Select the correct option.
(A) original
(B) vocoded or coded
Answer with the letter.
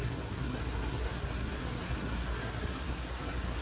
B